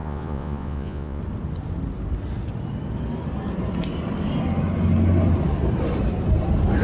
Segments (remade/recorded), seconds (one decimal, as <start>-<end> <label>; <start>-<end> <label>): 0.0-1.2 remade; 1.2-6.8 recorded